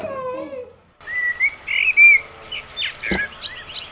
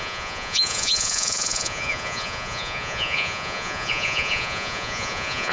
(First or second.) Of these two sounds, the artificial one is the second